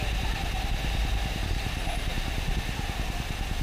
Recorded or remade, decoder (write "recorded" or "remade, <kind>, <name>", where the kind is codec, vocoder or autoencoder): recorded